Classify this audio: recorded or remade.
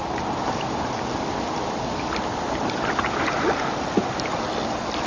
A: recorded